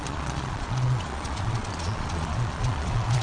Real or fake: fake